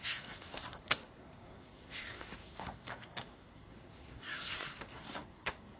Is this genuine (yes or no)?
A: no